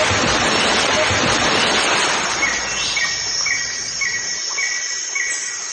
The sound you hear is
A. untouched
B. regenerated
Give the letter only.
A